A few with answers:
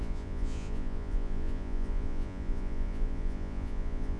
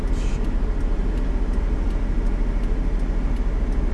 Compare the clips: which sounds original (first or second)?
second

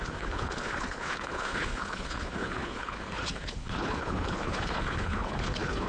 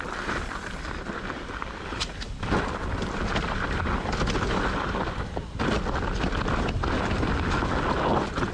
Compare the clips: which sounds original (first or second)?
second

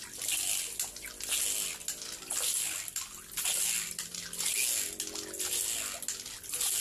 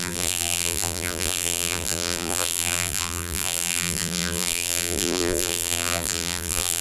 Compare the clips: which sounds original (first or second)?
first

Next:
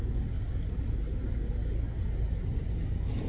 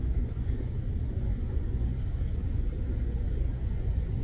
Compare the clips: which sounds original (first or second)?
first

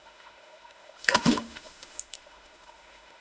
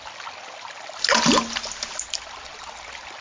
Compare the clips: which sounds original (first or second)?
second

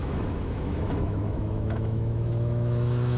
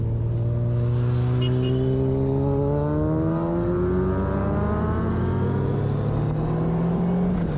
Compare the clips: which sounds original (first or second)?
second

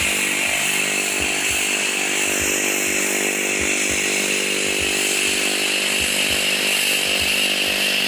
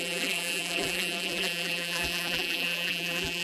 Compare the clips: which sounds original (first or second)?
first